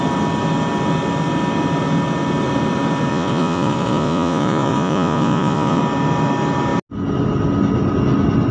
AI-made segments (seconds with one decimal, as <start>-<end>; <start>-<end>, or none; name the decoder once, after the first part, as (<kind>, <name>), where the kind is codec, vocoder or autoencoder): 3.1-5.8 (vocoder, Vocos)